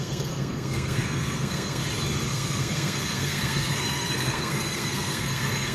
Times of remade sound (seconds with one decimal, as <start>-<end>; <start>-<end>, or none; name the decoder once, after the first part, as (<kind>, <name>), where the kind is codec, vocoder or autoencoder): 0.0-1.8 (codec, SNAC); 2.3-5.7